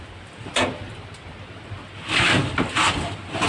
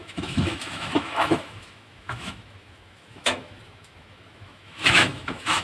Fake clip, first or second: second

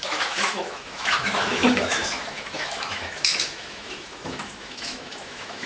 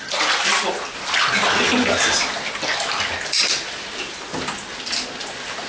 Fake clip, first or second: first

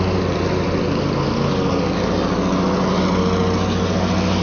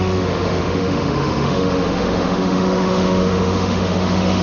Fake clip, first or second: second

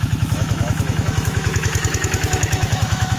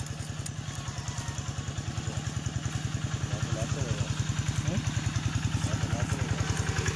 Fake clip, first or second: first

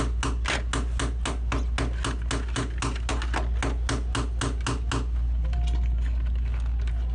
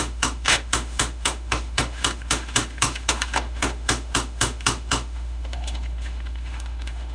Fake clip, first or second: second